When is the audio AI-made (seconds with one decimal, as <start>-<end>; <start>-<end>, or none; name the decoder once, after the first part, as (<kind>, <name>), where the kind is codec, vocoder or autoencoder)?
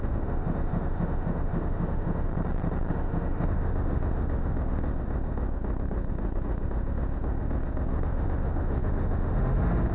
0.0-2.3 (autoencoder, DAC-VAE); 2.9-9.9